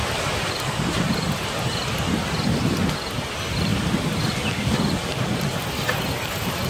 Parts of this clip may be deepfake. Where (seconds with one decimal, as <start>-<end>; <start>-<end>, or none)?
none